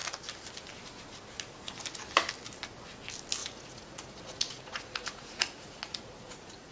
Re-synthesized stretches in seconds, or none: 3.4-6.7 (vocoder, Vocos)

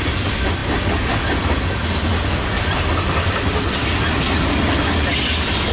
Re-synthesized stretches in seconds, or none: none

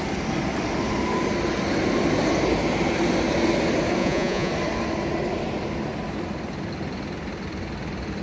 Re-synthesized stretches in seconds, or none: 4.0-4.5 (vocoder, Vocos)

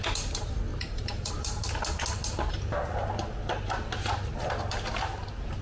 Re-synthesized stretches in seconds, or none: 0.7-1.3 (vocoder, BigVGAN v2)